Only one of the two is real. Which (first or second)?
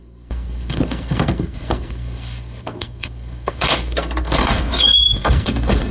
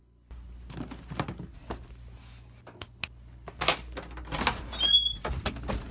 second